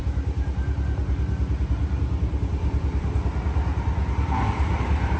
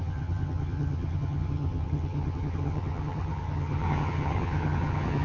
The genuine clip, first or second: first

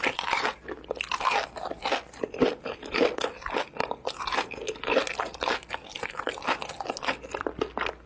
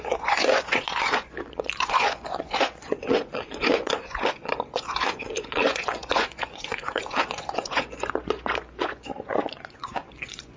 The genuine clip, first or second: first